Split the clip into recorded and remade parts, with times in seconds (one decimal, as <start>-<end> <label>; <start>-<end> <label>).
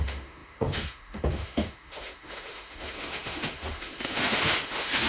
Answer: 0.0-5.1 remade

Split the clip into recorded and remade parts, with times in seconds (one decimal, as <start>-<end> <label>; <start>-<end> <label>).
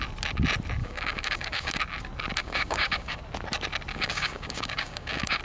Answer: 0.0-0.8 recorded; 0.8-1.8 remade; 1.8-2.4 recorded; 2.4-3.2 remade; 3.2-3.9 recorded; 3.9-5.4 remade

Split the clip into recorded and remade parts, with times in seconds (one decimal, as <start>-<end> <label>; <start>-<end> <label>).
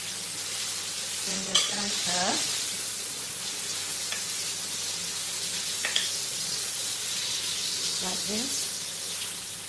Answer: 0.0-1.3 recorded; 1.3-3.6 remade; 3.6-6.2 recorded; 6.2-7.4 remade; 7.4-9.7 recorded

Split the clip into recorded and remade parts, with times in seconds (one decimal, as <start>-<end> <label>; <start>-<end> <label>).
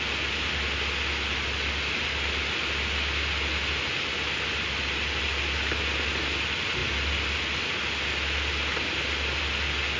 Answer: 0.0-10.0 recorded